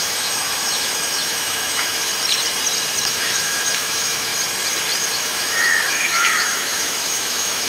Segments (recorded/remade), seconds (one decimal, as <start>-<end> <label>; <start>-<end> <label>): 0.0-2.1 remade; 2.1-3.0 recorded; 3.0-4.3 remade; 4.3-5.0 recorded; 5.0-7.7 remade